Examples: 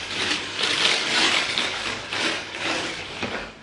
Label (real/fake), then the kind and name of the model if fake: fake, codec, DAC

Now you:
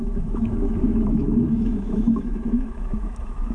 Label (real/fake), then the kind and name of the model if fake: fake, autoencoder, DAC-VAE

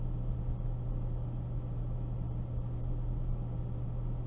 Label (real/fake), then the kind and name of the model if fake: real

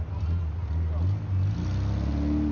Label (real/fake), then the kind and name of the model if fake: real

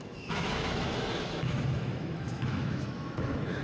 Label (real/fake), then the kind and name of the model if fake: fake, autoencoder, DAC-VAE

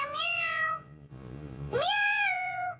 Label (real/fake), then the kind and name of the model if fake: fake, vocoder, Vocos